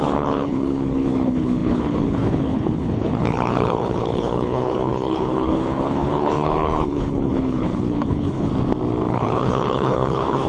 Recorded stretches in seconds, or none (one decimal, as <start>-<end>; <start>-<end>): 8.5-9.1